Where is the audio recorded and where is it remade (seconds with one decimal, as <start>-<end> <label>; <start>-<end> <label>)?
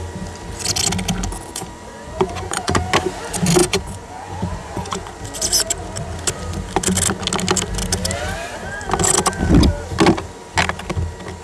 0.0-1.5 recorded; 1.5-2.9 remade; 2.9-3.6 recorded; 3.6-5.2 remade; 5.2-11.4 recorded